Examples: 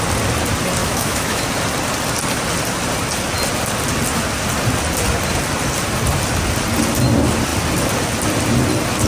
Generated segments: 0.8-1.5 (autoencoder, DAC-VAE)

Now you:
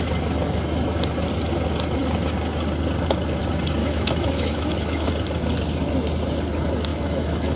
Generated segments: 3.8-5.1 (autoencoder, DAC-VAE); 6.9-7.6

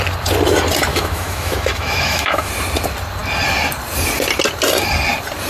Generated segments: 0.9-2.5 (autoencoder, DAC-VAE)